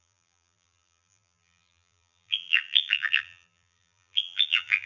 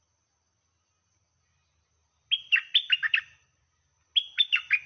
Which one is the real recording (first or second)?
second